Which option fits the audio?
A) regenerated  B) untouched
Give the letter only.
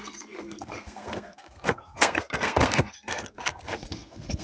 A